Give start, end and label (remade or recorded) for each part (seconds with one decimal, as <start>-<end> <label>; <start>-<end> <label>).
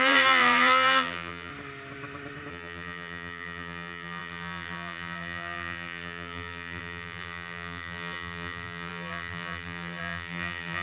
0.0-1.5 remade; 1.5-2.5 recorded; 2.5-10.8 remade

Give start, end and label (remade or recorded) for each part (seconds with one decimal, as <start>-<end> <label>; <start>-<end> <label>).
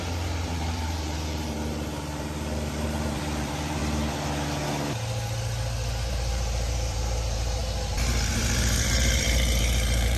0.0-3.8 remade; 3.8-6.1 recorded; 6.1-7.6 remade; 7.6-8.3 recorded; 8.3-10.2 remade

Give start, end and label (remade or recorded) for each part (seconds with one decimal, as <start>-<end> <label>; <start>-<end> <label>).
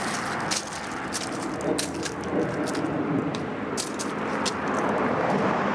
0.0-5.7 recorded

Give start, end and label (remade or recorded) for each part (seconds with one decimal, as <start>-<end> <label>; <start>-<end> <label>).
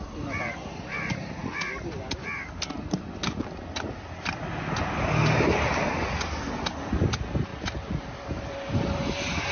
0.0-7.5 recorded; 7.5-9.5 remade